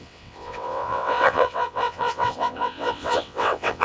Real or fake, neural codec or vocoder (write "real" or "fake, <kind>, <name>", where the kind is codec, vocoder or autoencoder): fake, vocoder, WaveNeXt